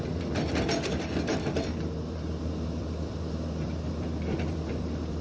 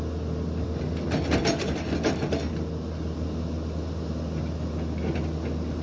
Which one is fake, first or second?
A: first